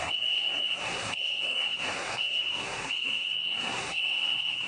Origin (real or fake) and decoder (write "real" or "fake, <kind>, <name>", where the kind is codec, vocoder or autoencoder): fake, codec, SNAC